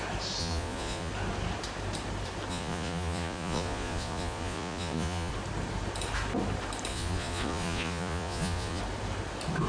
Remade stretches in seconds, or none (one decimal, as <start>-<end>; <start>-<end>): 0.4-1.1; 2.5-5.3; 6.9-8.8